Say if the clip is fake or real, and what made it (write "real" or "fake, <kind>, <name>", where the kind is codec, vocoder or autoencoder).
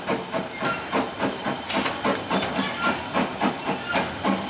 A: real